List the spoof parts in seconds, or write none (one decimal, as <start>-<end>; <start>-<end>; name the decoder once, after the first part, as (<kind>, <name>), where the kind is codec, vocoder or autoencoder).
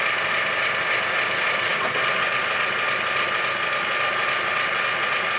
none